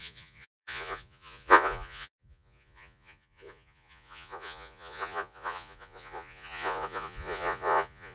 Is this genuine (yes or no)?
no